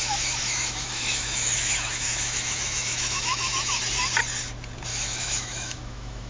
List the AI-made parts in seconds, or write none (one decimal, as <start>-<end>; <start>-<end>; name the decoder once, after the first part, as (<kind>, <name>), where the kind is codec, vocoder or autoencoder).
0.0-3.8 (autoencoder, DAC-VAE); 4.9-6.3